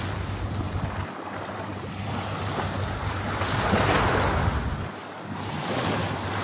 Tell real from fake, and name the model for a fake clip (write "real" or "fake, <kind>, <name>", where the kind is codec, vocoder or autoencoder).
real